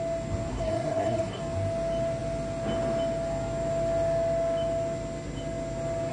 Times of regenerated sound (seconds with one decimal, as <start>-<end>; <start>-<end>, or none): 0.5-1.4